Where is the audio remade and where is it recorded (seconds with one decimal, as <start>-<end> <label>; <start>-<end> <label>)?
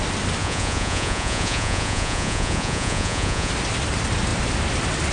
0.0-0.4 recorded; 0.4-3.5 remade; 3.5-5.1 recorded